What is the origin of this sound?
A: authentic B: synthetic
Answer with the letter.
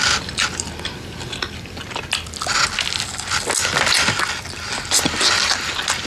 A